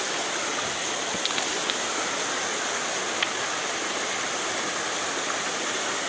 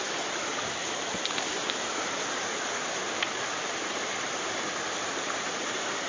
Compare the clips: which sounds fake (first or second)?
second